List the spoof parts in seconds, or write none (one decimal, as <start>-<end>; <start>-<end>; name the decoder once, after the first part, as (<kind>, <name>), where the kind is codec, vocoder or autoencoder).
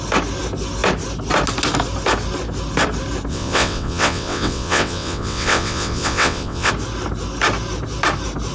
3.3-6.7 (vocoder, WaveNeXt)